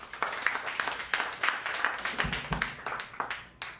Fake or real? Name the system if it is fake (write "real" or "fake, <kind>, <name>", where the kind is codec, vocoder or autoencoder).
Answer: real